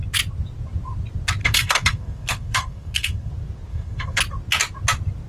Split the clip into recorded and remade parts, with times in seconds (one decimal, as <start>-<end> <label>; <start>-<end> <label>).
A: 0.0-1.4 recorded; 1.4-3.3 remade; 3.3-3.7 recorded; 3.7-4.2 remade; 4.2-5.3 recorded

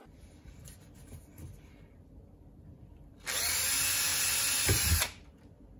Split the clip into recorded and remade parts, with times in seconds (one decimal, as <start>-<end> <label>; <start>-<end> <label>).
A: 0.0-3.5 remade; 3.5-4.1 recorded; 4.1-4.8 remade; 4.8-5.8 recorded

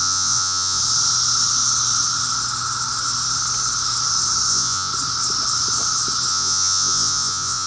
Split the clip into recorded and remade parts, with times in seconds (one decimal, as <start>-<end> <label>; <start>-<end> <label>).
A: 0.0-0.8 remade; 0.8-4.5 recorded; 4.5-4.9 remade; 4.9-6.3 recorded; 6.3-7.7 remade

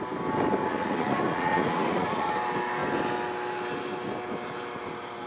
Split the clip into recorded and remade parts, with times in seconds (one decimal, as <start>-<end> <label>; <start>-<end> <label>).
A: 0.0-0.6 recorded; 0.6-2.3 remade; 2.3-5.3 recorded

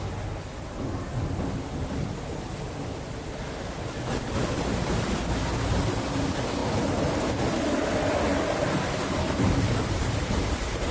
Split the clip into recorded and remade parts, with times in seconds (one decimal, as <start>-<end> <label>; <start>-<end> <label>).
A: 0.0-10.9 recorded

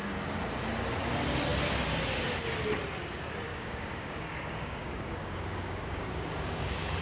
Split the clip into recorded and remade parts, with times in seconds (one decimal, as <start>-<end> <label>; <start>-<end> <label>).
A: 0.0-3.5 recorded; 3.5-7.0 remade

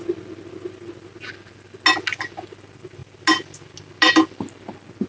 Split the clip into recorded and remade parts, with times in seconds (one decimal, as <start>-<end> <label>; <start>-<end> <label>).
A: 0.0-5.1 recorded

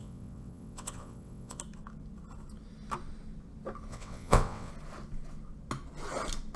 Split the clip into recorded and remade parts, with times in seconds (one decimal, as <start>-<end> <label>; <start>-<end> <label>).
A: 0.0-1.6 remade; 1.6-3.9 recorded; 3.9-4.7 remade; 4.7-6.6 recorded